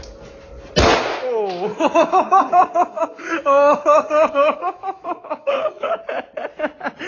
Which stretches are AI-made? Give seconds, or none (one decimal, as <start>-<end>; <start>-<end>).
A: 1.7-6.0